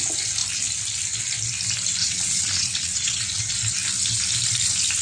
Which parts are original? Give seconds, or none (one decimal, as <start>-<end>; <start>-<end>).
0.0-2.0; 3.4-5.0